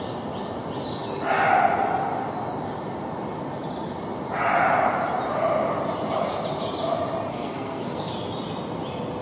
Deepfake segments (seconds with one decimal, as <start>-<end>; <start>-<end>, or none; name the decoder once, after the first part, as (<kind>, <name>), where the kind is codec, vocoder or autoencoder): 7.3-8.1 (codec, SNAC)